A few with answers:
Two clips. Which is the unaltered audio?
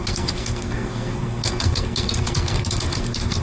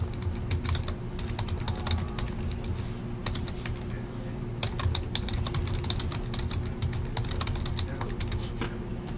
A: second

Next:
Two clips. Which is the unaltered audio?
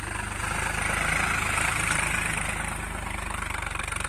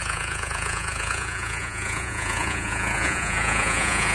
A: first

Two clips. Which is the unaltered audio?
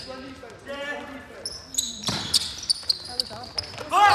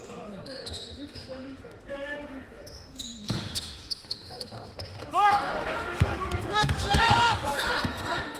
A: first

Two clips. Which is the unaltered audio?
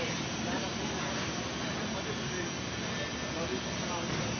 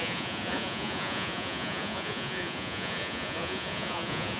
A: first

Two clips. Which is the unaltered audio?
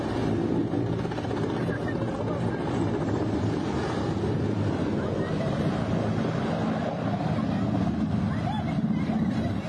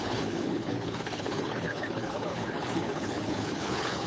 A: first